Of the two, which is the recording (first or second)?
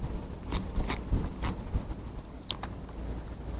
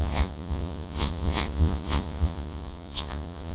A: first